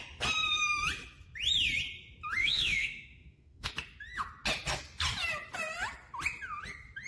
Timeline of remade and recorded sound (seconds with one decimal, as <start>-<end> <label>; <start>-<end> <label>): 0.0-2.4 recorded; 2.4-3.7 remade; 3.7-7.1 recorded

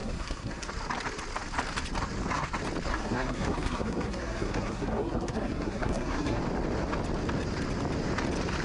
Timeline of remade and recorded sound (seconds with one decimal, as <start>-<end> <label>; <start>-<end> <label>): 0.0-0.7 remade; 0.7-2.9 recorded; 2.9-6.4 remade; 6.4-8.6 recorded

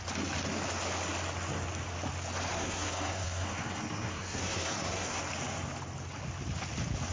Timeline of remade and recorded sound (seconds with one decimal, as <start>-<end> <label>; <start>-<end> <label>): 0.0-2.5 recorded; 2.5-5.2 remade; 5.2-7.1 recorded

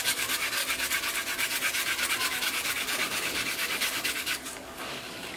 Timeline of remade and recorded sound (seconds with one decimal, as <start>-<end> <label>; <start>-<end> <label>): 0.0-0.6 remade; 0.6-2.1 recorded; 2.1-5.4 remade